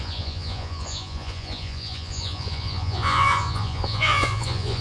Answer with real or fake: fake